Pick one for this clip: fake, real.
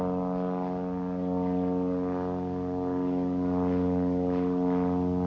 real